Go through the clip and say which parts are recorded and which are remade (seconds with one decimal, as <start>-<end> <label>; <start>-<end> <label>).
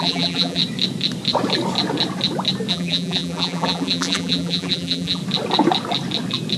0.0-0.6 remade; 0.6-2.7 recorded; 2.7-5.2 remade; 5.2-6.6 recorded